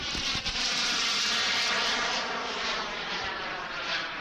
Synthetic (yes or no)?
yes